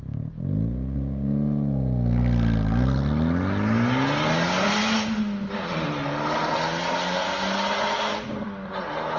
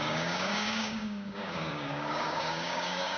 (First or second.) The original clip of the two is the first